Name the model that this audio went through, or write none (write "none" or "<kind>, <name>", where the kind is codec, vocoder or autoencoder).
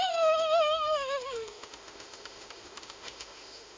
autoencoder, DAC-VAE